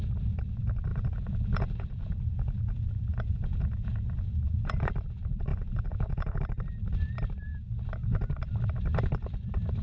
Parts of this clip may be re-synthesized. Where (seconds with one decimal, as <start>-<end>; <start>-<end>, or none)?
0.9-4.9; 5.5-6.4